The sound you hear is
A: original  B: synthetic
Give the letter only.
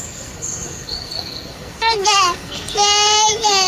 B